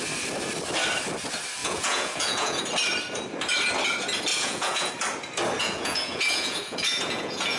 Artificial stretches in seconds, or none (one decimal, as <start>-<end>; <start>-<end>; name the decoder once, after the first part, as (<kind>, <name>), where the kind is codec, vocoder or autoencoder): 1.6-2.6 (vocoder, Vocos); 4.3-4.9; 5.6-7.6